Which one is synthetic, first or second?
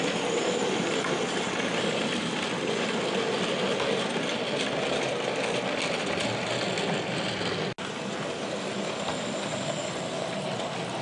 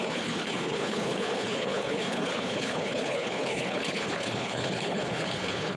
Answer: second